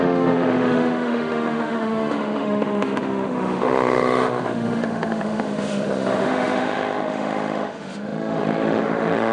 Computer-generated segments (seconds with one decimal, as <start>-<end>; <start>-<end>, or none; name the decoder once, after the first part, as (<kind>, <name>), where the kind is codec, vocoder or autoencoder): 0.0-9.3 (autoencoder, DAC-VAE)